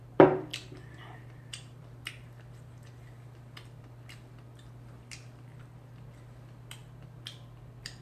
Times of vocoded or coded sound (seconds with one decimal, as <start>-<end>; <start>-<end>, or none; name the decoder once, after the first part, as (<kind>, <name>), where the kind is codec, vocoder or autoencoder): 0.0-8.0 (vocoder, BigVGAN v2)

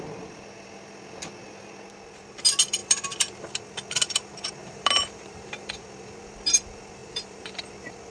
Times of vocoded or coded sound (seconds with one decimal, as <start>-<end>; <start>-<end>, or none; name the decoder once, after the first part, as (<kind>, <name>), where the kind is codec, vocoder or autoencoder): 2.8-3.5 (vocoder, BigVGAN v2); 4.6-5.8; 7.0-7.6

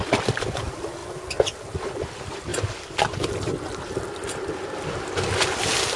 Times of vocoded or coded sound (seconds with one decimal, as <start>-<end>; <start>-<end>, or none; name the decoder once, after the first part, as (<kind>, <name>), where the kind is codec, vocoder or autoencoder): 0.0-1.0 (vocoder, BigVGAN v2); 1.9-4.2

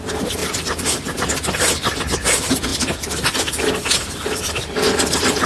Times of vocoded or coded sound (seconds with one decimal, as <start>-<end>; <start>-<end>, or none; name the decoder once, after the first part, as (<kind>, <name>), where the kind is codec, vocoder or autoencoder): 0.4-1.3 (vocoder, BigVGAN v2); 2.7-5.5

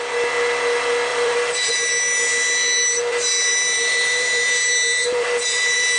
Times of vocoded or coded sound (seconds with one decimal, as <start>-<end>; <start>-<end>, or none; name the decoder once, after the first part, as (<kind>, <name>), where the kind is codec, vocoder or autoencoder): 1.1-1.7 (vocoder, BigVGAN v2); 3.5-6.0

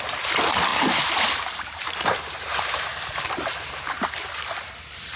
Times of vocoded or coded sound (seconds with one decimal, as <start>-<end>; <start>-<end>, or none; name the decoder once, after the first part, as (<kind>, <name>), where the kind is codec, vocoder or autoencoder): 0.7-3.8 (vocoder, BigVGAN v2)

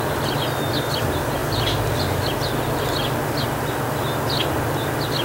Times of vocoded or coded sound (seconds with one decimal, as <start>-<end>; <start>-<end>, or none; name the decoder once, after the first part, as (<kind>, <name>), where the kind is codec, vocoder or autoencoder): none